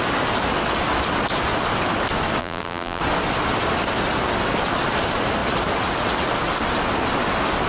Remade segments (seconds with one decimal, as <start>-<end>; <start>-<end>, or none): 2.4-3.0